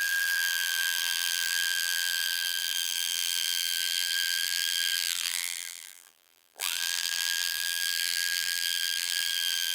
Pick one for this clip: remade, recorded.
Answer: remade